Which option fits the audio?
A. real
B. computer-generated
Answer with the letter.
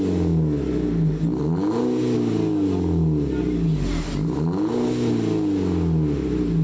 A